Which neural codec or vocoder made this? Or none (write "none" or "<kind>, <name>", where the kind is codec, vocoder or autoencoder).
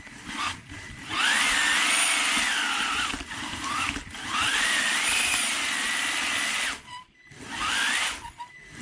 none